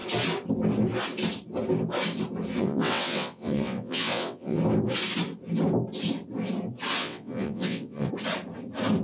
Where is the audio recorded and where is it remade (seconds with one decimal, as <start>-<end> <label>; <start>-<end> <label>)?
0.0-2.6 recorded; 2.6-4.6 remade; 4.6-7.0 recorded; 7.0-8.1 remade; 8.1-9.0 recorded